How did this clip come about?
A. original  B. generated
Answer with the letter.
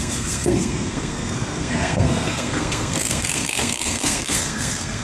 B